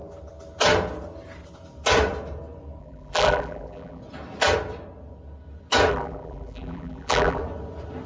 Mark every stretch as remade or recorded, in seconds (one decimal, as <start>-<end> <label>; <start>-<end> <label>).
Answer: 0.0-2.8 recorded; 2.8-4.0 remade; 4.0-5.9 recorded; 5.9-7.4 remade; 7.4-8.1 recorded